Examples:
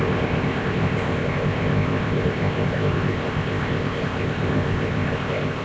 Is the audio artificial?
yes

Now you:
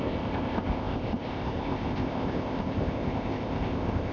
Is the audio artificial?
yes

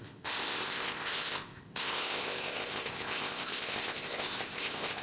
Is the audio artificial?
yes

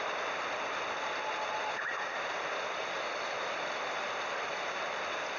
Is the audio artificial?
no